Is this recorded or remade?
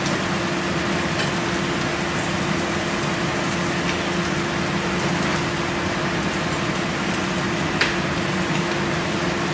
recorded